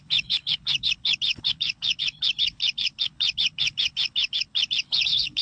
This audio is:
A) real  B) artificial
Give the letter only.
B